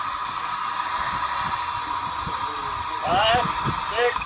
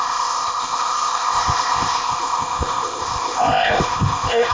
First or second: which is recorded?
first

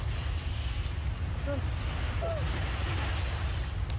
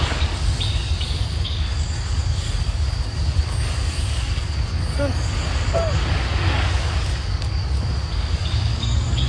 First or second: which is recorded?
first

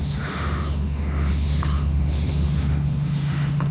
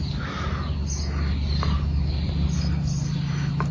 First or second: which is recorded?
second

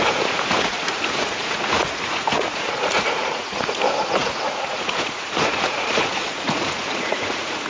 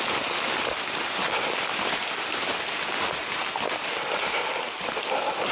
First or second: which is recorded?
second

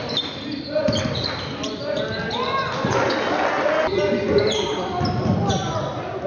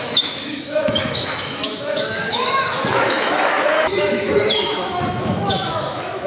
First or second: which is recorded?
first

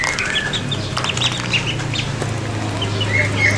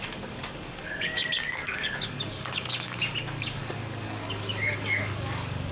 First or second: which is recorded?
first